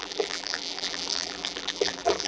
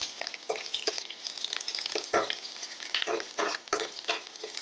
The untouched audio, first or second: second